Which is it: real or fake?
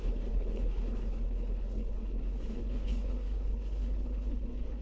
fake